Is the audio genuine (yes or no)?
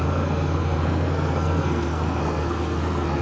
no